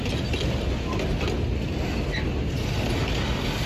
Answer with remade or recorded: recorded